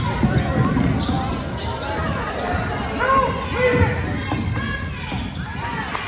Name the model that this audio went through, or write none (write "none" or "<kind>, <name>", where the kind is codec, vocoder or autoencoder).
none